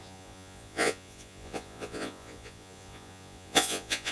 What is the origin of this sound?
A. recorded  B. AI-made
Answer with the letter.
B